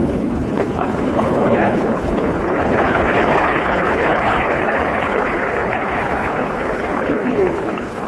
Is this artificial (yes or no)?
yes